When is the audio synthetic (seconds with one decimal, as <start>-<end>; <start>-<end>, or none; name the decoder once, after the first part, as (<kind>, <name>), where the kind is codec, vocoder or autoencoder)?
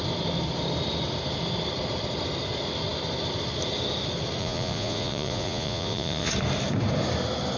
4.4-6.3 (vocoder, Vocos)